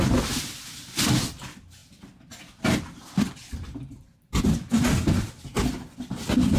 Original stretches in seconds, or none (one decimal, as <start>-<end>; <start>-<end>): 0.0-6.6